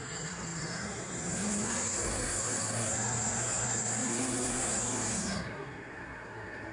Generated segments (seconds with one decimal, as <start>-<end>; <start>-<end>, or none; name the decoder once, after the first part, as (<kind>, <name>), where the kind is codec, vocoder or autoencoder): 0.0-6.7 (codec, SNAC)